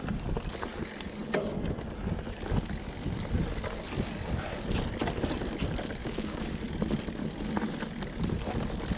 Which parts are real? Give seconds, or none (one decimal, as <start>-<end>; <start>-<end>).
0.0-6.0; 6.6-9.0